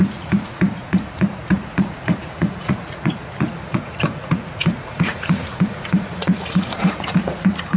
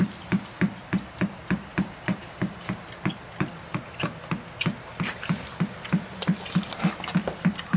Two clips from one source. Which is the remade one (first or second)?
first